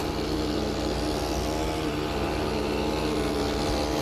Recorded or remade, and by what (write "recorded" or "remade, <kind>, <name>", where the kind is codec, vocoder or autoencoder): recorded